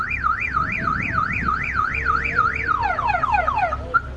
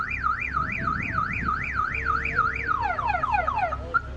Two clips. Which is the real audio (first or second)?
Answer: second